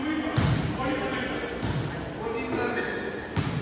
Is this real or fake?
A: real